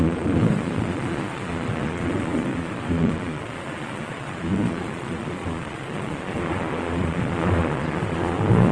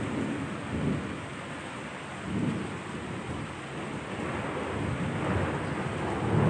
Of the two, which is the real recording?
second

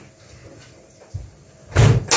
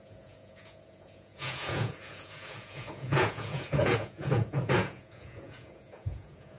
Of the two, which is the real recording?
first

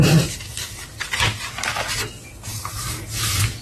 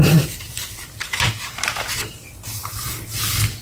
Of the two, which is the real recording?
first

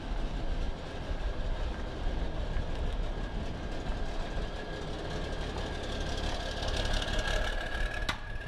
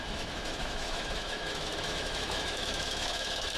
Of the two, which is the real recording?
first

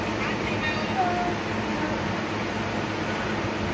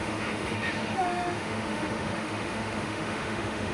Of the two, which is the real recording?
first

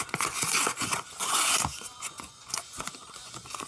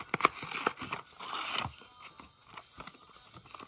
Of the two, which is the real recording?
second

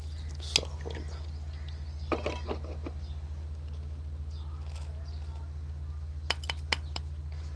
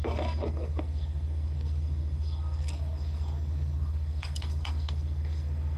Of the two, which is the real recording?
first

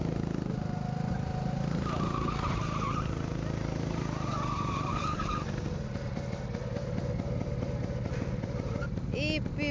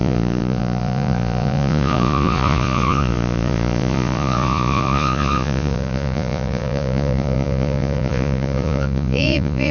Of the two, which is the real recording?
first